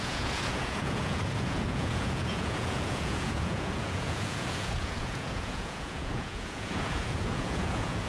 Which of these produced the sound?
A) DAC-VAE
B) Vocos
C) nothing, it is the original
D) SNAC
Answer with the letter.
B